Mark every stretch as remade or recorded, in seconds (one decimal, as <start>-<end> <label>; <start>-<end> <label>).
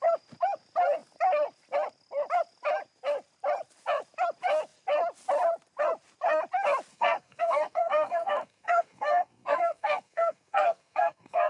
0.0-6.9 recorded; 6.9-11.5 remade